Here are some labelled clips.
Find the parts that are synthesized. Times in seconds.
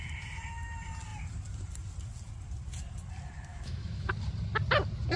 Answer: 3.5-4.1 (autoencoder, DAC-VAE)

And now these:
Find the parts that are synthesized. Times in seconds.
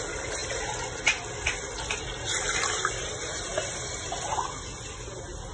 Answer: none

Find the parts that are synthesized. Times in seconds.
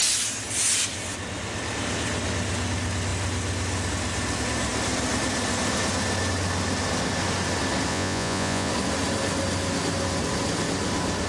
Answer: 7.9-8.7 (vocoder, Vocos)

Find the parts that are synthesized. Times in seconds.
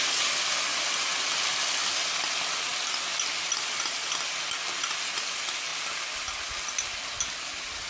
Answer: none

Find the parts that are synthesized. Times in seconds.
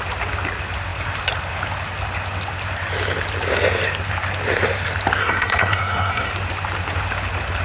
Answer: 5.2-6.3 (codec, SNAC)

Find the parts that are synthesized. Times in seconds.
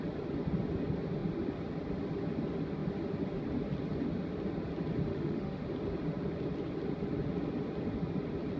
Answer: 5.1-5.6 (autoencoder, DAC-VAE)